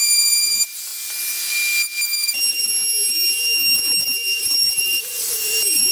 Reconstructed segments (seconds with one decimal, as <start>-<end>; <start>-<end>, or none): 0.0-0.9; 4.4-5.9